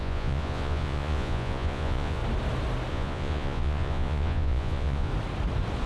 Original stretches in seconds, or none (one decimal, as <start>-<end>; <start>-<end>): 2.2-2.9; 5.1-5.9